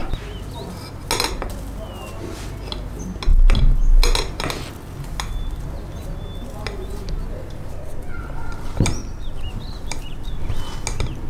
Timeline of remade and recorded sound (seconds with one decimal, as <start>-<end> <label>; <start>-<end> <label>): 0.0-9.0 recorded; 9.0-10.3 remade; 10.3-11.3 recorded